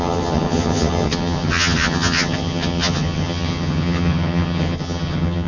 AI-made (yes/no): yes